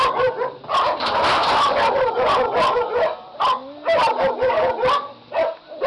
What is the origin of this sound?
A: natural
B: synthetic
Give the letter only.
A